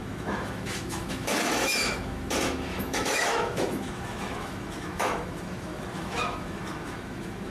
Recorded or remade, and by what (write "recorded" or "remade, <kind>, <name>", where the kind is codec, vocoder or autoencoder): remade, autoencoder, DAC-VAE